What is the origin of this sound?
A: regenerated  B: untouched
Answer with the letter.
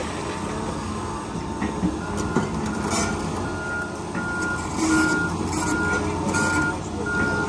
B